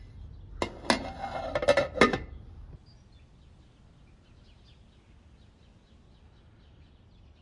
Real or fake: real